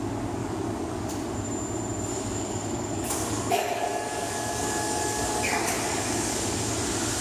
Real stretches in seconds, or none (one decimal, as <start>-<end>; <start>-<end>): 0.0-0.4; 1.1-2.1; 6.4-7.2